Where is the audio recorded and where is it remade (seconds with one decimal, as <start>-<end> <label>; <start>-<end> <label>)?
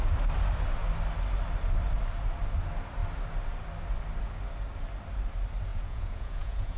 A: 0.0-5.7 recorded; 5.7-6.8 remade